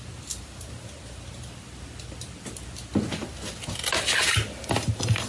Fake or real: real